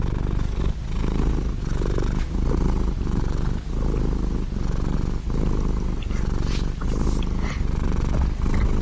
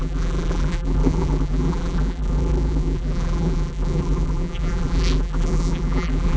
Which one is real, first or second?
first